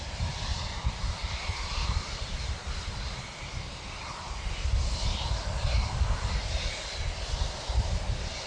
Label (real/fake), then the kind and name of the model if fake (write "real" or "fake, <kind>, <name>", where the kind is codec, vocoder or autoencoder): real